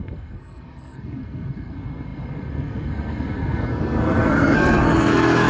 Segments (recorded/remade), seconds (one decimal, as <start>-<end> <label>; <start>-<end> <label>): 0.0-5.5 remade